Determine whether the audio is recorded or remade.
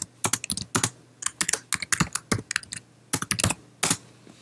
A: recorded